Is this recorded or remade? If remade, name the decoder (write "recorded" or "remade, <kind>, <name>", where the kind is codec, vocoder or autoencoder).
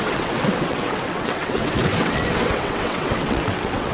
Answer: remade, vocoder, WaveNeXt